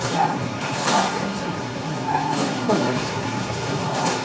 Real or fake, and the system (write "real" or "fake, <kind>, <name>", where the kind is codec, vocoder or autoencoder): fake, codec, SNAC